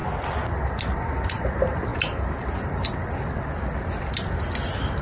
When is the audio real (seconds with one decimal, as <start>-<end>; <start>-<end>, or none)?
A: 1.9-2.5